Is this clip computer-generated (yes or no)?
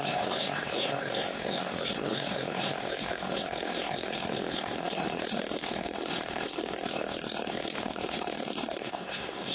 yes